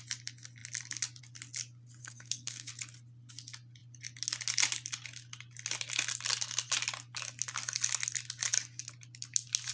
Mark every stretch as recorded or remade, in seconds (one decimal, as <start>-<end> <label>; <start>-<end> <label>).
0.0-2.0 recorded; 2.0-2.7 remade; 2.7-9.7 recorded